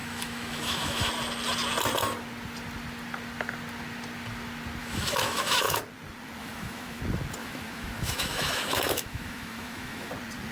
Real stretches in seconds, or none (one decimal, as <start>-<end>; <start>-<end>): 1.1-4.8; 5.8-6.4; 7.0-7.4; 10.1-10.5